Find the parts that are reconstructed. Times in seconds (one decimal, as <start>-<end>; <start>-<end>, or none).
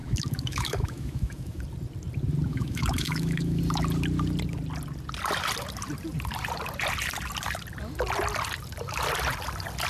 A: 0.0-1.6; 2.5-3.6